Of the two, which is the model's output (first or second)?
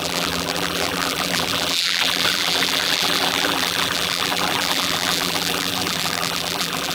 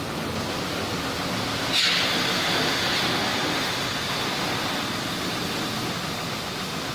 first